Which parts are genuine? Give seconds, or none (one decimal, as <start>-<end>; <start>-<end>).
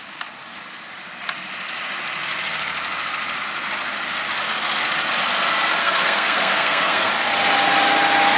0.0-5.8; 7.1-8.4